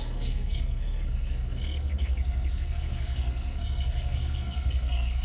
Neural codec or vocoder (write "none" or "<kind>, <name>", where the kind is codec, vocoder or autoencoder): codec, SNAC